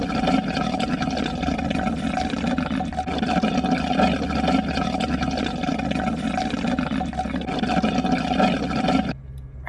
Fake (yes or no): no